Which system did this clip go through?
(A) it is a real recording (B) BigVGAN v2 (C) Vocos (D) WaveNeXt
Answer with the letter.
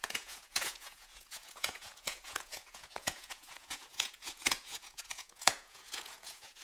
C